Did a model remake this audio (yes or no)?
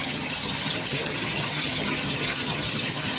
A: yes